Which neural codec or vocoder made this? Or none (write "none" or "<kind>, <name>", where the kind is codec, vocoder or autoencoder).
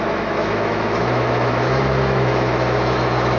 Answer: autoencoder, DAC-VAE